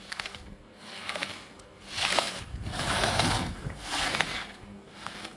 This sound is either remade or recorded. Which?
remade